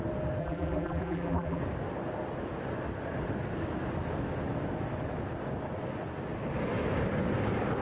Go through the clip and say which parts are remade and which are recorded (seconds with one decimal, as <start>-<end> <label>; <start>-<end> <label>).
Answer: 0.0-0.4 recorded; 0.4-1.6 remade; 1.6-7.8 recorded

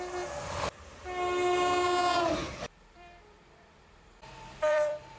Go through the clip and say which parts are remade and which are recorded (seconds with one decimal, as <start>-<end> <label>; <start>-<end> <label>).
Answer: 0.0-2.4 recorded; 2.4-5.2 remade

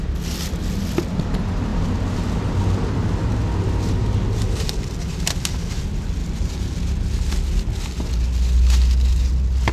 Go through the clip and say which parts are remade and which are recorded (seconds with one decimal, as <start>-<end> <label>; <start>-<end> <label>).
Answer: 0.0-6.2 recorded; 6.2-6.7 remade; 6.7-9.7 recorded

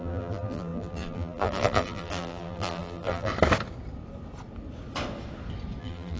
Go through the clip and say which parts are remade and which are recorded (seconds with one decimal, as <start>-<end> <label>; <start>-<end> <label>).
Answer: 0.0-3.3 remade; 3.3-5.8 recorded; 5.8-6.2 remade

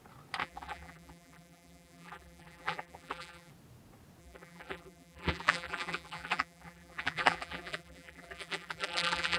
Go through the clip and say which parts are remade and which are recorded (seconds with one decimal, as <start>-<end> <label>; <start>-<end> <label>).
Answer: 0.0-0.4 recorded; 0.4-3.5 remade; 3.5-4.2 recorded; 4.2-9.4 remade

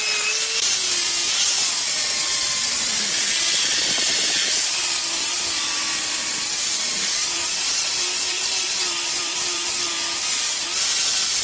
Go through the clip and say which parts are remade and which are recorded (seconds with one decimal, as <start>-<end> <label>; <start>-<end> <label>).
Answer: 0.0-1.6 recorded; 1.6-6.1 remade; 6.1-7.2 recorded; 7.2-9.9 remade; 9.9-11.4 recorded

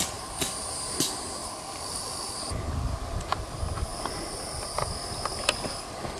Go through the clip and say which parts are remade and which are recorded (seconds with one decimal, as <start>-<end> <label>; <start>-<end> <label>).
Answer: 0.0-6.2 recorded